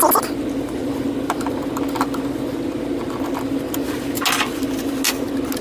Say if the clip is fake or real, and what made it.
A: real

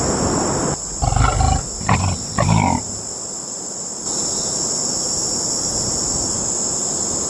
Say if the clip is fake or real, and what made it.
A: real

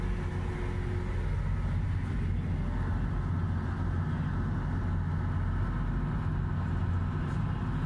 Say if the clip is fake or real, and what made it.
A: real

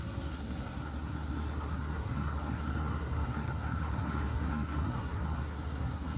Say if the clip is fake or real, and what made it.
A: fake, codec, SNAC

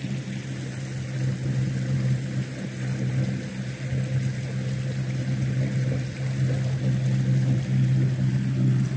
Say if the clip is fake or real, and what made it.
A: real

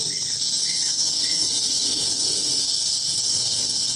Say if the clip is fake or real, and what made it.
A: fake, codec, SNAC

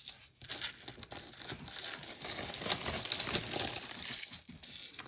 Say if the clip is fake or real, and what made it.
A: real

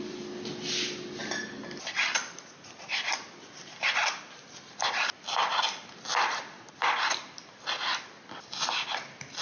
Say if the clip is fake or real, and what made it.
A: real